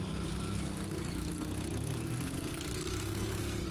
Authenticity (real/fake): fake